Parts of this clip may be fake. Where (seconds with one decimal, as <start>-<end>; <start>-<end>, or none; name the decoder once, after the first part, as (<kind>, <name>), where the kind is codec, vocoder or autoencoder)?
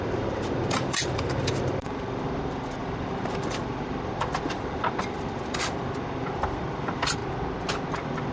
0.0-7.2 (vocoder, BigVGAN v2); 7.9-8.3